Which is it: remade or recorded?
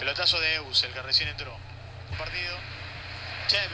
recorded